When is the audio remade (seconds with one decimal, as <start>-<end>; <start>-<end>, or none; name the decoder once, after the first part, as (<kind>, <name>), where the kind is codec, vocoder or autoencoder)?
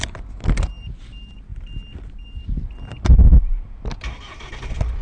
none